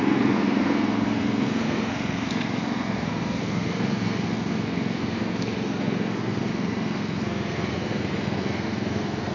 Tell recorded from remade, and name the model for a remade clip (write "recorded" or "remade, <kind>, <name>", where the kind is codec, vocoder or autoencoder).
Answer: remade, codec, SNAC